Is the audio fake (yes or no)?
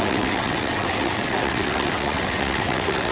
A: yes